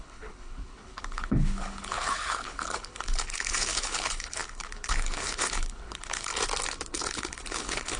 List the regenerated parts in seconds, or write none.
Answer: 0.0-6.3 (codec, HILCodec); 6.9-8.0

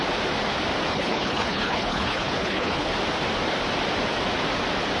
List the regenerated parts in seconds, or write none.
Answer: 0.9-2.9 (codec, HILCodec)

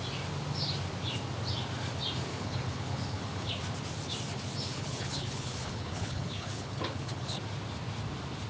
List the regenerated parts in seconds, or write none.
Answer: 2.3-3.6 (codec, HILCodec); 4.7-7.4

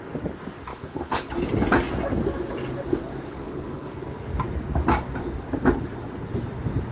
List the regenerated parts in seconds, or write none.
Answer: 0.7-1.3 (codec, HILCodec); 3.3-4.0